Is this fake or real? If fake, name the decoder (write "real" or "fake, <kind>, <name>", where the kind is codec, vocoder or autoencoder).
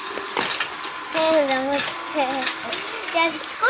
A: real